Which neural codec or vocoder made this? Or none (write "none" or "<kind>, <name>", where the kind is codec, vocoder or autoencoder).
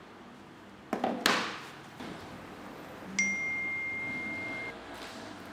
none